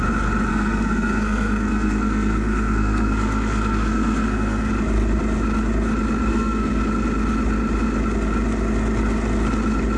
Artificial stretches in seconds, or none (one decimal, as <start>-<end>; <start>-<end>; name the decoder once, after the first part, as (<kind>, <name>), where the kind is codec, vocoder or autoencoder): 0.5-4.7 (codec, SNAC); 6.3-6.8